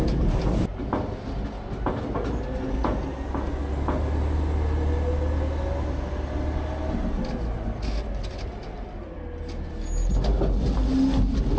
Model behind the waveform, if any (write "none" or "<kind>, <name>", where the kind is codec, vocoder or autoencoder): none